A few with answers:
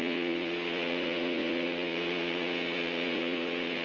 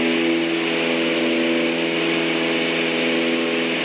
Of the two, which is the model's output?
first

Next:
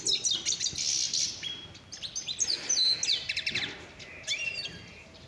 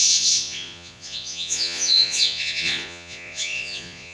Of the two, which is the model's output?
second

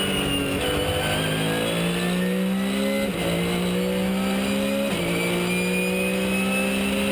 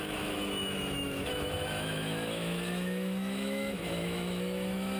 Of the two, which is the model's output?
second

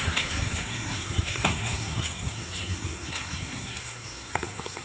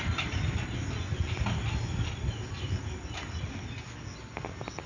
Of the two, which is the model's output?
first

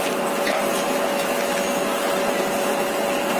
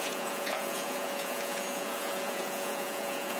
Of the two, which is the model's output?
second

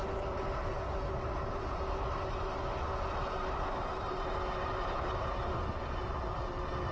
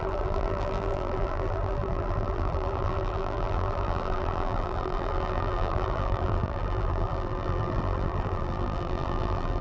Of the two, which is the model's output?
second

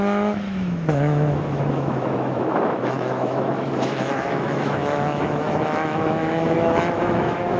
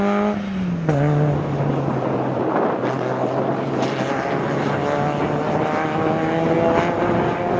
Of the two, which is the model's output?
first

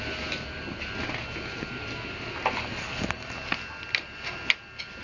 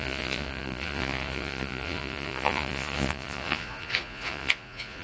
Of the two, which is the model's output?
second